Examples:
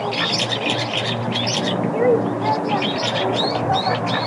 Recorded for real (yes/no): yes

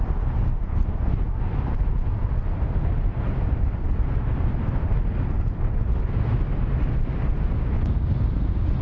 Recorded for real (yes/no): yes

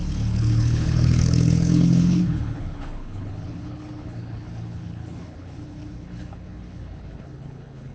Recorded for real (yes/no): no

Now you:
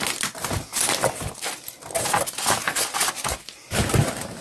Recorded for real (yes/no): yes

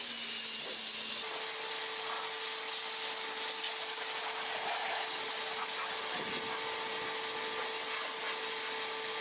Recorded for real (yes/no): yes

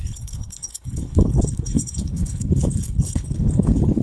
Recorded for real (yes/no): no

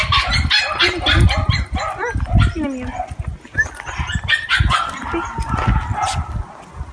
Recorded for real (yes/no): yes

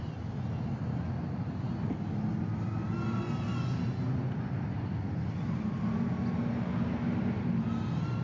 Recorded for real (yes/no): yes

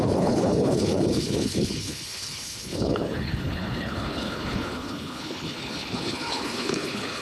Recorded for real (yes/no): no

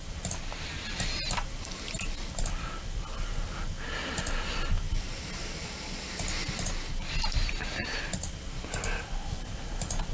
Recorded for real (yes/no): yes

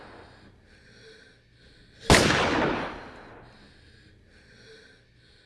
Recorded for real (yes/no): yes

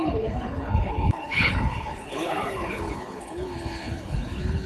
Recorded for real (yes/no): no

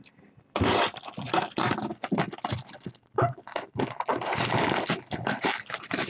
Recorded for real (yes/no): yes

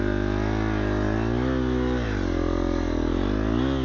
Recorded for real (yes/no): yes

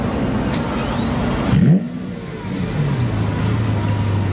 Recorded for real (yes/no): yes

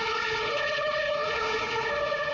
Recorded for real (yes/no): no